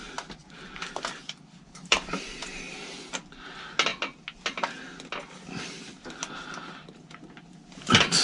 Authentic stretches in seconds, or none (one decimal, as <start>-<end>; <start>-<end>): 0.0-0.4; 2.4-8.2